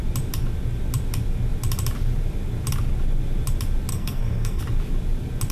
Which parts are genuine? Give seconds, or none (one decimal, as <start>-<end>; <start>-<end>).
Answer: 0.0-3.9; 4.6-5.5